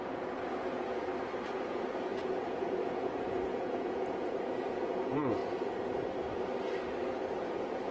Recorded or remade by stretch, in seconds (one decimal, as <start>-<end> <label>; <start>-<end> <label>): 0.0-1.1 remade; 1.1-1.6 recorded; 1.6-5.4 remade; 5.4-7.4 recorded; 7.4-7.9 remade